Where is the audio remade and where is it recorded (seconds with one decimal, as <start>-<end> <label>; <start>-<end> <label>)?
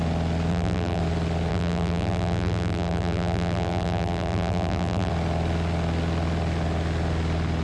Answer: 0.0-0.5 recorded; 0.5-1.0 remade; 1.0-1.5 recorded; 1.5-5.1 remade; 5.1-7.6 recorded